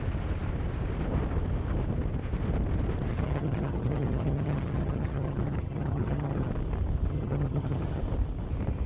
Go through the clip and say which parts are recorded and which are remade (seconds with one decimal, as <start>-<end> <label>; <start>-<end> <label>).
0.0-3.1 recorded; 3.1-6.5 remade; 6.5-7.1 recorded; 7.1-8.0 remade; 8.0-8.9 recorded